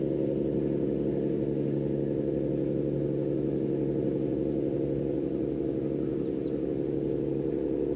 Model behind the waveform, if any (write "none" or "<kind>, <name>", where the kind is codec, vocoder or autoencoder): none